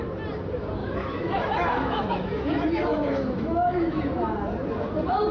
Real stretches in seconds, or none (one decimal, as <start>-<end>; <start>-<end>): 0.0-0.8; 4.0-5.3